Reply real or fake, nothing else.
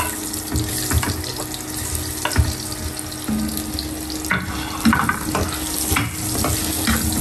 real